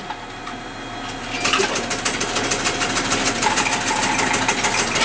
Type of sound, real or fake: real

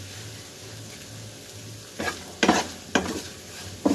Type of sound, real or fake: real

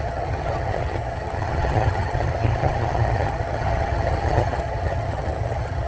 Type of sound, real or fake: fake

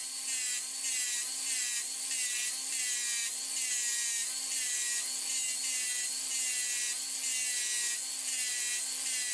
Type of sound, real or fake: real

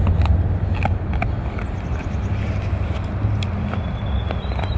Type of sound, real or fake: real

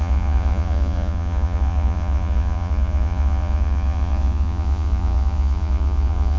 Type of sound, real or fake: fake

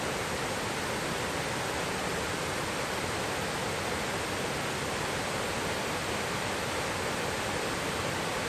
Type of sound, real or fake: real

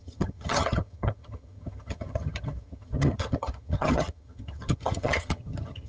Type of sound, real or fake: fake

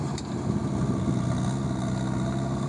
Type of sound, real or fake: real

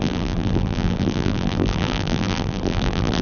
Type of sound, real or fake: fake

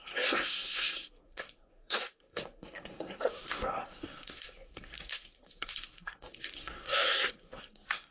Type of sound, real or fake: fake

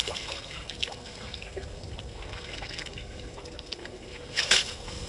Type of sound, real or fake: fake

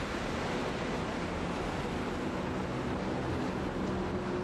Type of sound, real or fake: real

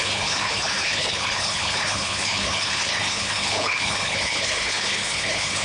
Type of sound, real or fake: fake